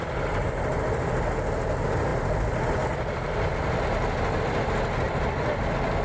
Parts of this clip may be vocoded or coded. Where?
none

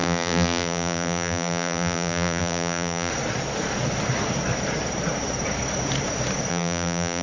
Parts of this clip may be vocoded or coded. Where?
0.0-3.1 (vocoder, BigVGAN v2); 6.5-7.2